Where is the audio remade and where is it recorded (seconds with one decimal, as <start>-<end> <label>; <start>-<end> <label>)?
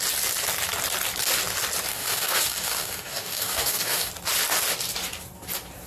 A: 0.0-1.9 recorded; 1.9-4.1 remade; 4.1-5.9 recorded